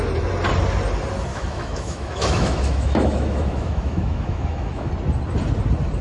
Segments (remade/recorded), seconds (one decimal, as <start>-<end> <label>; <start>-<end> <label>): 0.0-1.3 recorded; 1.3-4.9 remade; 4.9-6.0 recorded